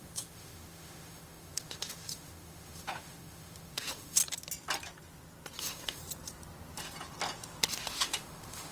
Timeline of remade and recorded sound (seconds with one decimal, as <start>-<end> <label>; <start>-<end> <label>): 0.0-4.2 remade; 4.2-5.6 recorded; 5.6-6.0 remade; 6.0-7.7 recorded; 7.7-8.7 remade